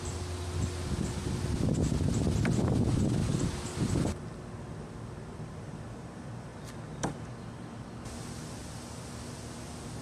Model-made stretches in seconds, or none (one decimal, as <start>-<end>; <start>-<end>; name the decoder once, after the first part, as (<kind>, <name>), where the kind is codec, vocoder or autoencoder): none